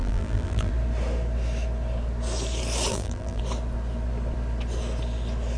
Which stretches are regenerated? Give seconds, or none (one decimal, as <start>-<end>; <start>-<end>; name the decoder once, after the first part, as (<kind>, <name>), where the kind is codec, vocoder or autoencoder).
0.0-0.7 (vocoder, BigVGAN v2); 2.9-3.4